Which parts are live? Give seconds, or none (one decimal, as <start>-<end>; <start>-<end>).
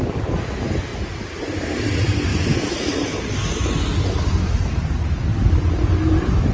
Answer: 0.0-0.9; 1.4-4.4; 5.1-6.5